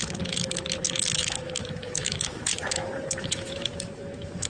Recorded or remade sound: remade